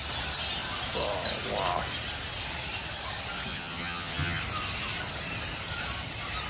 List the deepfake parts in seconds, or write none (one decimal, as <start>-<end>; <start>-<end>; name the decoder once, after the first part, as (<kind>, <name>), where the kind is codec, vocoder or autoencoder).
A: 3.5-4.4 (vocoder, HiFi-GAN)